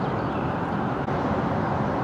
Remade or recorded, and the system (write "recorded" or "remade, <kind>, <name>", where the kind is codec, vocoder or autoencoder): recorded